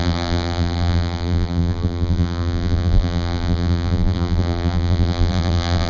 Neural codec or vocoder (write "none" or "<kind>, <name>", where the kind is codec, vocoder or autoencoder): vocoder, BigVGAN v2